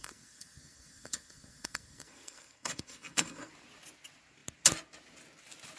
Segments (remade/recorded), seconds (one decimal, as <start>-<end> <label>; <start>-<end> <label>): 0.0-3.5 remade; 3.5-5.8 recorded